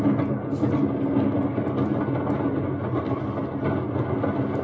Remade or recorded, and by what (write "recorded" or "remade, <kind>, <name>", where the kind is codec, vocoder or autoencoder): recorded